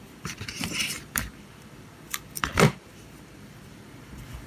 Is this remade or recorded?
remade